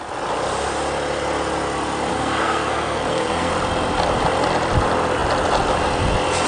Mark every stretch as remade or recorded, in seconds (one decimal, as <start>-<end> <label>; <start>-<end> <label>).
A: 0.0-2.1 recorded; 2.1-3.5 remade; 3.5-6.5 recorded